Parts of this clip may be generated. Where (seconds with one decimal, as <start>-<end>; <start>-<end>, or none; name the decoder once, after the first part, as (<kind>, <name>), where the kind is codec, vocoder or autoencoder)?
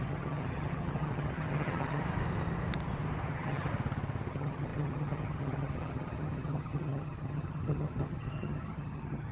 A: 0.0-2.0 (vocoder, HiFi-GAN); 3.3-3.7; 4.3-9.3